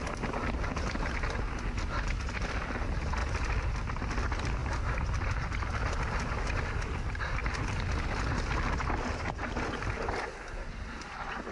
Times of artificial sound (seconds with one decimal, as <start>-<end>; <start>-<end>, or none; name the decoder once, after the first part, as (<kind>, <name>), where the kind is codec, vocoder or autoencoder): none

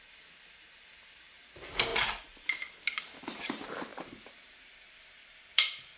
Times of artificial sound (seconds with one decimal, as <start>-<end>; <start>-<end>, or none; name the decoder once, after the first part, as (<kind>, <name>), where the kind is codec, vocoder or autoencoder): 0.0-1.9 (vocoder, BigVGAN v2); 3.2-6.0

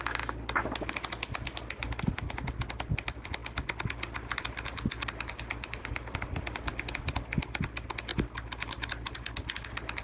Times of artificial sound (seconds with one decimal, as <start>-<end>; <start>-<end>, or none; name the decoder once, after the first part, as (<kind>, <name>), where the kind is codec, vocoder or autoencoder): 8.1-9.1 (vocoder, BigVGAN v2)